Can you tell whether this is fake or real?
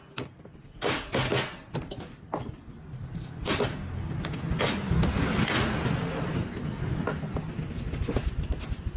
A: real